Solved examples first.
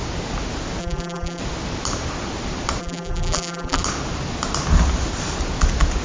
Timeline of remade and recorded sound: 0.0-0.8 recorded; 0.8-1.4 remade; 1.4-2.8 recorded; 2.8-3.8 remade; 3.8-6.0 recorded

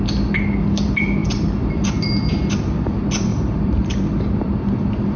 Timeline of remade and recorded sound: 0.0-3.3 recorded; 3.3-4.4 remade; 4.4-5.2 recorded

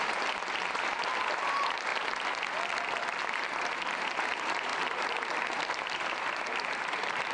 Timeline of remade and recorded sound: 0.0-1.9 remade; 1.9-3.2 recorded; 3.2-7.3 remade

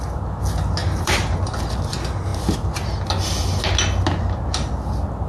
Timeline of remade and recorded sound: 0.0-0.8 recorded; 0.8-1.6 remade; 1.6-5.3 recorded

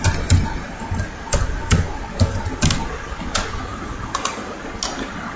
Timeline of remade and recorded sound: 0.0-3.7 recorded; 3.7-4.4 remade; 4.4-5.4 recorded

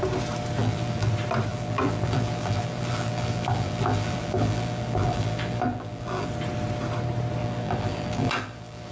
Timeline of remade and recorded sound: 0.0-0.6 recorded; 0.6-1.1 remade; 1.1-1.5 recorded; 1.5-6.3 remade; 6.3-7.4 recorded; 7.4-8.9 remade

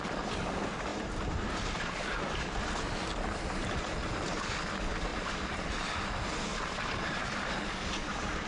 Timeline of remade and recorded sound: 0.0-5.1 recorded; 5.1-5.6 remade; 5.6-6.5 recorded; 6.5-7.6 remade; 7.6-8.5 recorded